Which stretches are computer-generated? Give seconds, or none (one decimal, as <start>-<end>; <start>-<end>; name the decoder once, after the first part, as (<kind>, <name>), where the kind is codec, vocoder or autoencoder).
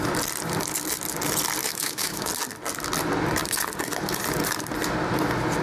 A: 1.6-2.3 (autoencoder, DAC-VAE)